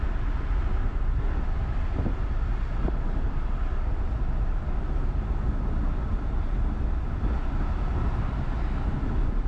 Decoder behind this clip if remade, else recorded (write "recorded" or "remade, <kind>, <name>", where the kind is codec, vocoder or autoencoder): recorded